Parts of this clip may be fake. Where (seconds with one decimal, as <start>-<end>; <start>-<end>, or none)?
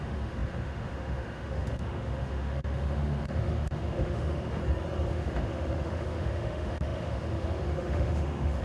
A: 0.0-4.6; 5.1-8.6